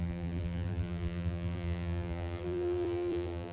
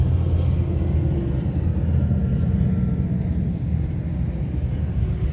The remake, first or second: first